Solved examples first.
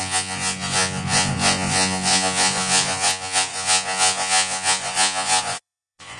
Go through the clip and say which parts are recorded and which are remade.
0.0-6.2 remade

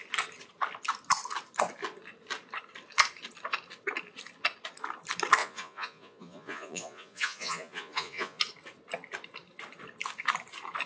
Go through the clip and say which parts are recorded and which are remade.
0.0-5.4 recorded; 5.4-8.4 remade; 8.4-10.9 recorded

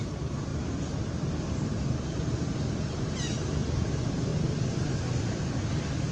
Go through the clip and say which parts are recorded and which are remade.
0.0-6.1 recorded

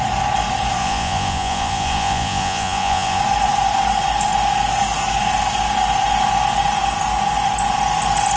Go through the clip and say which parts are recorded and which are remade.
0.0-0.8 recorded; 0.8-3.2 remade; 3.2-8.4 recorded